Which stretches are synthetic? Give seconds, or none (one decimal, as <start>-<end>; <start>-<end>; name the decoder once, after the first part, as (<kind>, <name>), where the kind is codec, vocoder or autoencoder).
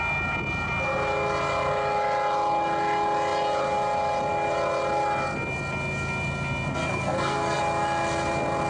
6.7-7.6 (codec, SNAC)